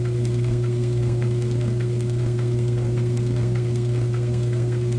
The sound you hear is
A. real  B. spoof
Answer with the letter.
B